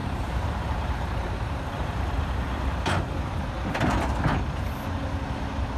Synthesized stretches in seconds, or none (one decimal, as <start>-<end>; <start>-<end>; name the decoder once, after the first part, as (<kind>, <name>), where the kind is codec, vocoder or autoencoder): 0.0-3.5 (vocoder, BigVGAN v2)